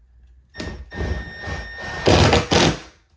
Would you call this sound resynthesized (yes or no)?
no